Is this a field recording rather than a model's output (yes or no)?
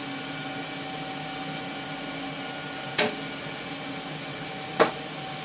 yes